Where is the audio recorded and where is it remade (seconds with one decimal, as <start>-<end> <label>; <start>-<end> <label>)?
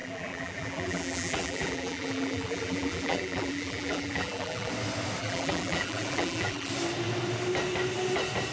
0.0-4.7 remade; 4.7-5.2 recorded; 5.2-6.7 remade; 6.7-8.5 recorded